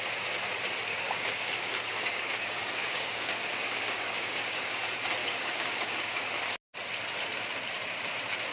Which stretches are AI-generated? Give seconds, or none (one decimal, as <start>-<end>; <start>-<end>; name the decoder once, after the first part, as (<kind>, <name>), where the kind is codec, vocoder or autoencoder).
0.9-4.7 (codec, DAC); 5.2-6.3